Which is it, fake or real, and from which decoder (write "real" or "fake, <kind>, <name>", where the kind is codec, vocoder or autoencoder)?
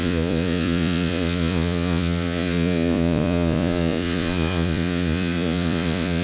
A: fake, vocoder, Vocos